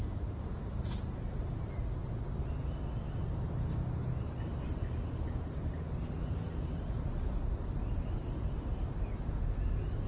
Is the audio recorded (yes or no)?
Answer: yes